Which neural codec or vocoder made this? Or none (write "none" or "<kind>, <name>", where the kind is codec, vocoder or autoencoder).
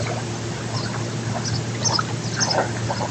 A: none